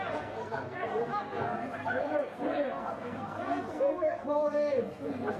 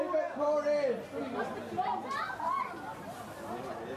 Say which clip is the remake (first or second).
first